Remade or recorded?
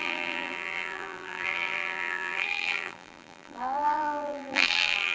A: remade